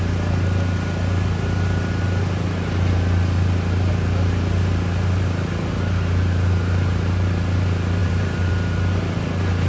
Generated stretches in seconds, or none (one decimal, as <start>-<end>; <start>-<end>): 8.0-8.5